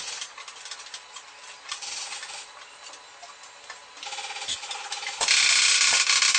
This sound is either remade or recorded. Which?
recorded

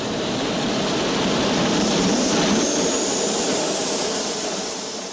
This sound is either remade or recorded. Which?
remade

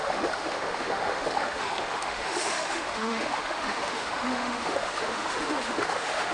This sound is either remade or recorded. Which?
remade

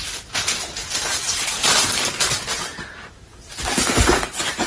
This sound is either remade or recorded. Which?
remade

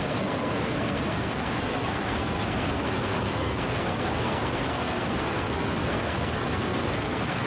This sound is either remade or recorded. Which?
remade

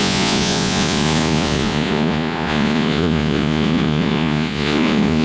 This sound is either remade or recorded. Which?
remade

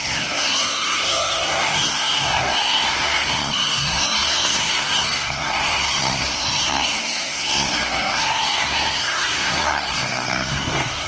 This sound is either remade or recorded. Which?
remade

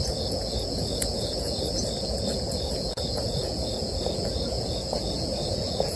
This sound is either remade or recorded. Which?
remade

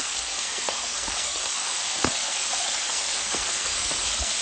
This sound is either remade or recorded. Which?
remade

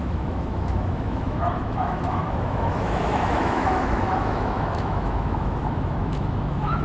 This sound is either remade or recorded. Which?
remade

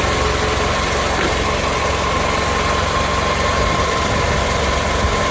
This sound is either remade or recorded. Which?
recorded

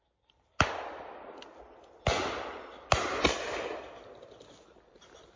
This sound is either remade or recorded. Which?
recorded